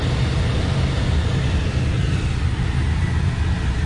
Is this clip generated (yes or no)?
no